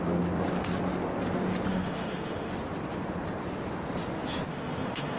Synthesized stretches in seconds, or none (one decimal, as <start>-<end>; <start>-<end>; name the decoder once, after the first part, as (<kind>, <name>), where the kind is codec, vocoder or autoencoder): 1.7-2.5 (autoencoder, DAC-VAE); 4.5-5.2